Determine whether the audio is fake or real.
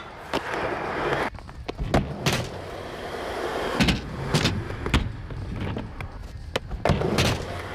real